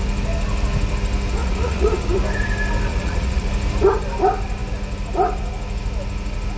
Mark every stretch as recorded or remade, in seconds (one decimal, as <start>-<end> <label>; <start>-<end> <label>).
0.0-1.4 recorded; 1.4-2.0 remade; 2.0-2.9 recorded; 2.9-3.5 remade; 3.5-6.6 recorded